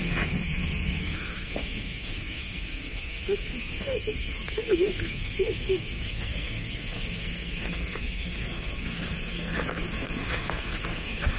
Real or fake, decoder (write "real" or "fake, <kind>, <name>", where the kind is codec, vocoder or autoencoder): fake, codec, SNAC